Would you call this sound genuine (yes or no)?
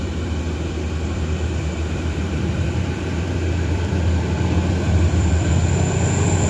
no